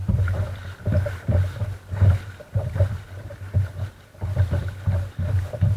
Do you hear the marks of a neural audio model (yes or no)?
no